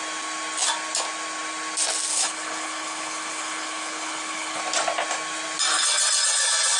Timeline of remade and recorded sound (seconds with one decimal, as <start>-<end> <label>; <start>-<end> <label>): 0.0-2.1 recorded; 2.1-4.6 remade; 4.6-6.8 recorded